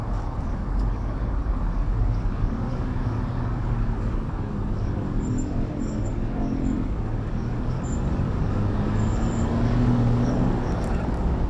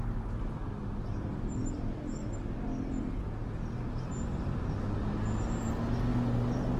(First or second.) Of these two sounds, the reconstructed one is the first